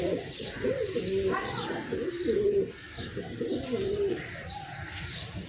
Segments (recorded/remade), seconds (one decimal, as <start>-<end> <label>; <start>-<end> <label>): 0.0-1.0 remade; 1.0-4.1 recorded; 4.1-5.5 remade